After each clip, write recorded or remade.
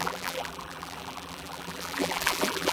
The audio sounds remade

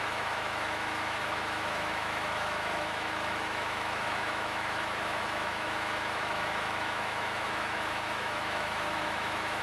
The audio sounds remade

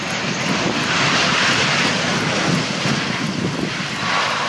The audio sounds recorded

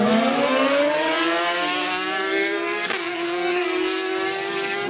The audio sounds remade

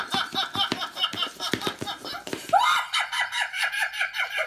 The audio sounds remade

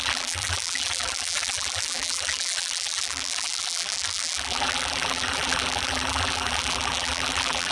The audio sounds remade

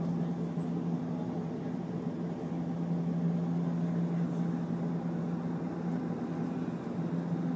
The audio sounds recorded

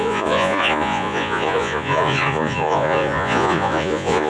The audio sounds remade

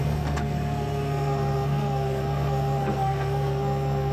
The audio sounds remade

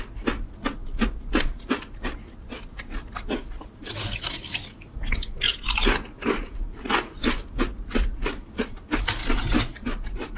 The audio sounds recorded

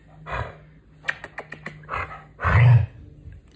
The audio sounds recorded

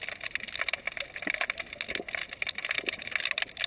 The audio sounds recorded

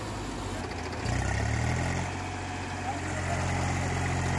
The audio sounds recorded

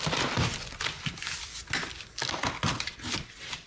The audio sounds recorded